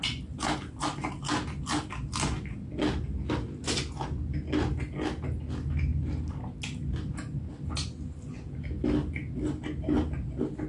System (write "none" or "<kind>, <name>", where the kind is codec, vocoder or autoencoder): none